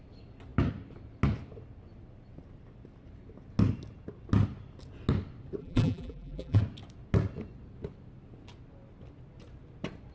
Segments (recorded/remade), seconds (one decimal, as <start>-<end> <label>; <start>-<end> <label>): 0.0-5.6 recorded; 5.6-6.6 remade; 6.6-10.1 recorded